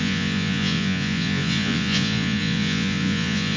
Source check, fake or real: fake